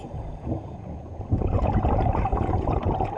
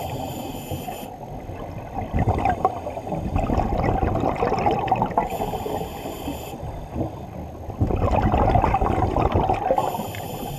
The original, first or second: second